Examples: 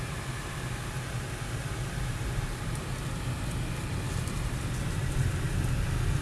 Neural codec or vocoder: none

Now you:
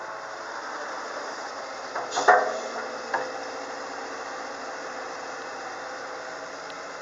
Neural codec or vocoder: none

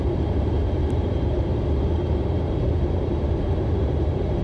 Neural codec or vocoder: vocoder, BigVGAN v2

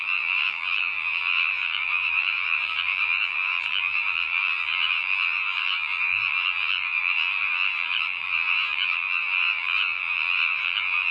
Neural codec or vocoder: vocoder, BigVGAN v2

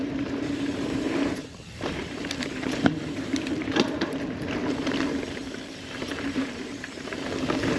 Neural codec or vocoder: vocoder, BigVGAN v2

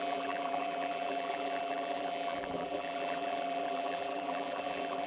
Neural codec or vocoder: vocoder, BigVGAN v2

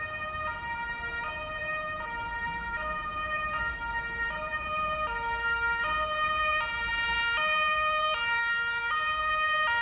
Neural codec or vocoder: vocoder, BigVGAN v2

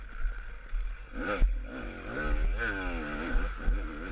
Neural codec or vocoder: none